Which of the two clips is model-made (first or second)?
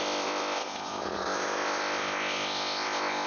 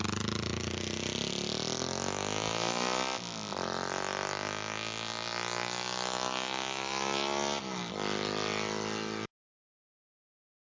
first